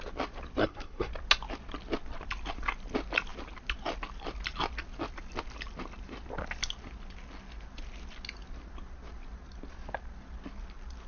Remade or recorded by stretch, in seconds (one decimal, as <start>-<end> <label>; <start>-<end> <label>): 0.0-0.6 recorded; 0.6-1.1 remade; 1.1-11.1 recorded